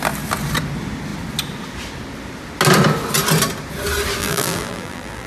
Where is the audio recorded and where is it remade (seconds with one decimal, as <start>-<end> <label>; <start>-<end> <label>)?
0.0-4.2 recorded; 4.2-5.3 remade